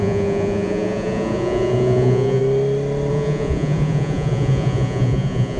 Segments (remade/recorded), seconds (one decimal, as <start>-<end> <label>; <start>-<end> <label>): 0.0-2.4 remade; 2.4-3.1 recorded; 3.1-5.6 remade